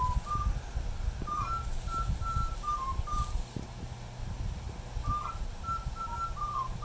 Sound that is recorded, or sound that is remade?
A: recorded